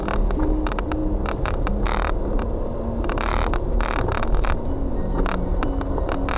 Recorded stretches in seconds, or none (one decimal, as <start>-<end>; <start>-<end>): 0.0-6.4